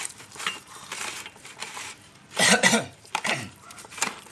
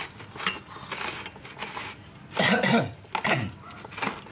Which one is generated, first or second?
first